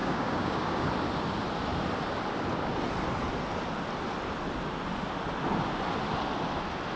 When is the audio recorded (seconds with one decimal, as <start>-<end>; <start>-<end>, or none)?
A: 0.9-7.0